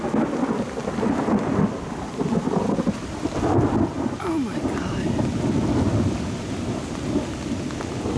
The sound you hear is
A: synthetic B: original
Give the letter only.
B